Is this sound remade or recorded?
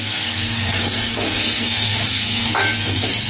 remade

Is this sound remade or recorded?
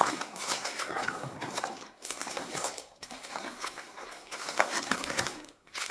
remade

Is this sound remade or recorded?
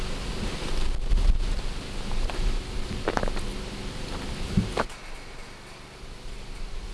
recorded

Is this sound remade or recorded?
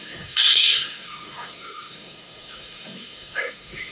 remade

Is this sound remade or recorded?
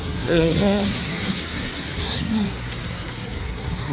remade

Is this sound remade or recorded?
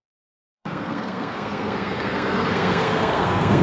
remade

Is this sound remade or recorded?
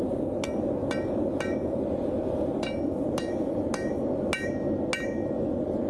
recorded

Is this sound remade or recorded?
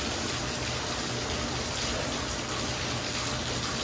recorded